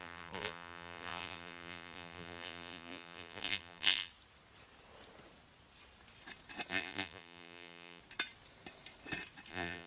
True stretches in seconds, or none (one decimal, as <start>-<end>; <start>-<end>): 4.1-6.7; 8.0-9.5